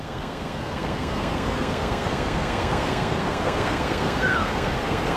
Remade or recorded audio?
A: remade